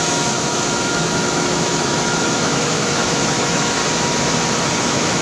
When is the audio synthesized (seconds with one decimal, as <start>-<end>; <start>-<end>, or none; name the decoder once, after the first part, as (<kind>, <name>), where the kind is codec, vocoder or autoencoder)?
0.0-3.8 (autoencoder, DAC-VAE); 4.8-5.2